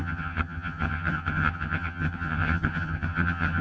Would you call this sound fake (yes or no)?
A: yes